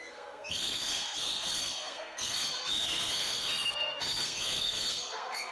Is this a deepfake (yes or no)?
yes